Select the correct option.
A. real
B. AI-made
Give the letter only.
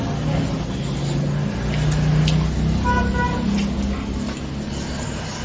A